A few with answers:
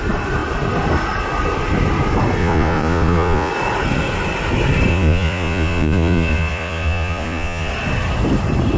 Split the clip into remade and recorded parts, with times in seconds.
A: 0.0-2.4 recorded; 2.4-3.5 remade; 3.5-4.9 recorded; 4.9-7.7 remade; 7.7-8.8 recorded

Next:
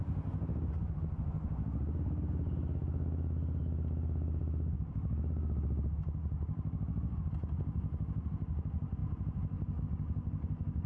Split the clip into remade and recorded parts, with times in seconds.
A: 0.0-10.9 recorded

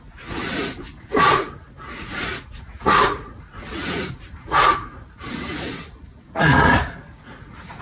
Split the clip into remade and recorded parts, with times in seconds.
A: 0.0-7.8 remade

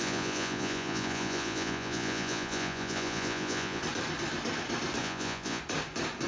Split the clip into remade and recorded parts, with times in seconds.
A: 0.0-3.8 remade; 3.8-5.0 recorded; 5.0-5.6 remade; 5.6-6.3 recorded

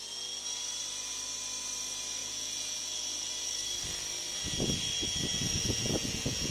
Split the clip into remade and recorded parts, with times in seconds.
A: 0.0-2.2 recorded; 2.2-3.3 remade; 3.3-5.3 recorded; 5.3-6.5 remade